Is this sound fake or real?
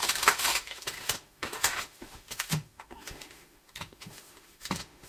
fake